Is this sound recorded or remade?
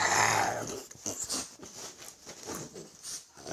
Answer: recorded